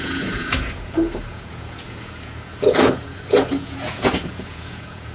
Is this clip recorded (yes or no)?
no